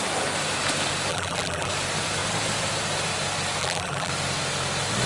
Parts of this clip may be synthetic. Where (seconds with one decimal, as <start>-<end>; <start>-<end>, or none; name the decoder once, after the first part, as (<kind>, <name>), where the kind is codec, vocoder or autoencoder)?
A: 1.1-1.7 (vocoder, BigVGAN v2); 3.6-4.1